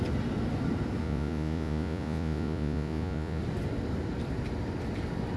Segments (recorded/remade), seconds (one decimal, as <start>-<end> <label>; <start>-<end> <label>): 0.0-1.0 recorded; 1.0-3.4 remade; 3.4-5.4 recorded